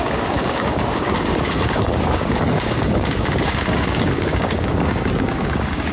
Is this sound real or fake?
fake